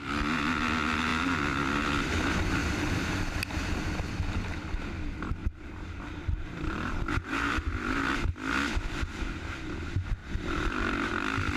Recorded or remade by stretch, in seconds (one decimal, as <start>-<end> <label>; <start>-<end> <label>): 0.0-5.4 recorded; 5.4-8.3 remade; 8.3-10.2 recorded; 10.2-11.1 remade; 11.1-11.6 recorded